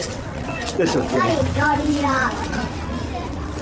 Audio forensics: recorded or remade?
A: remade